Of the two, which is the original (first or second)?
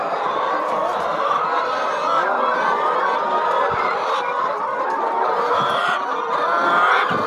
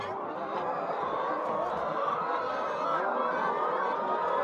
second